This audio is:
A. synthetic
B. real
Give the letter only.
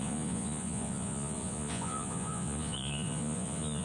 A